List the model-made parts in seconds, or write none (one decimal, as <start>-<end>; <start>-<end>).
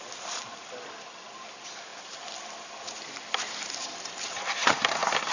1.9-5.3